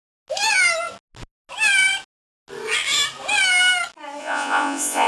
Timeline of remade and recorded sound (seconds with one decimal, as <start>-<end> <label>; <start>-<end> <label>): 0.0-4.2 recorded; 4.2-5.1 remade